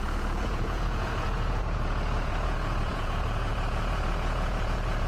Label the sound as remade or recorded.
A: remade